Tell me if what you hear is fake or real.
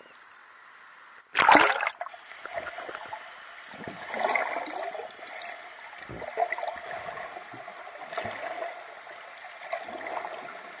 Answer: real